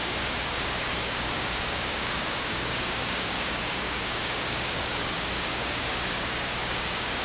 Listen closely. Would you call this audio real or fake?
fake